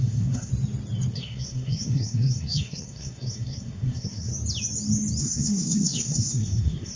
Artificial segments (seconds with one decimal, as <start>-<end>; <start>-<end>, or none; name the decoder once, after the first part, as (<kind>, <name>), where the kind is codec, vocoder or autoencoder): 0.0-0.5 (codec, SNAC); 1.1-4.3; 5.2-7.0